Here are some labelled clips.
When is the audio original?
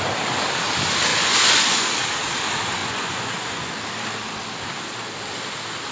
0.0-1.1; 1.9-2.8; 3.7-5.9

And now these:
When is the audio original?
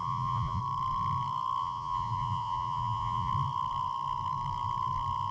0.6-1.6; 3.3-5.3